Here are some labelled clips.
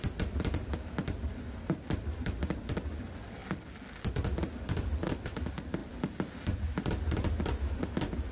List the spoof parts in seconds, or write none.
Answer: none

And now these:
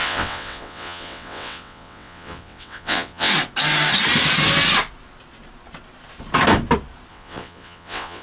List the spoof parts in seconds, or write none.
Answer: 0.0-3.3 (vocoder, WaveNeXt); 7.1-8.2

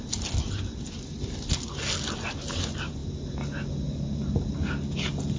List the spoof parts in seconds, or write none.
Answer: none

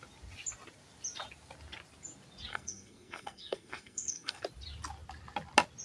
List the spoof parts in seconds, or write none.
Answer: 2.5-4.4 (codec, SNAC)

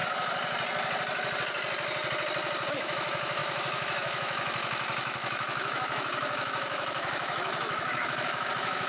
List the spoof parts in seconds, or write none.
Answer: 2.7-8.9 (autoencoder, DAC-VAE)

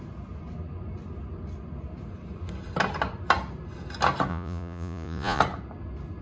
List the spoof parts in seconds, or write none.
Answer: 4.3-5.4 (vocoder, Vocos)

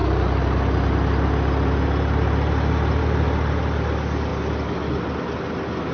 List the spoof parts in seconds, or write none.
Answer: none